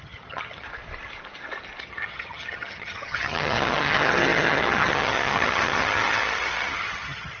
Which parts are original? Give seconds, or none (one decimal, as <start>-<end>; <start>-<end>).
0.7-1.8